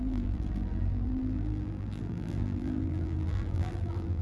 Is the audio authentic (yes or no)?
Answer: no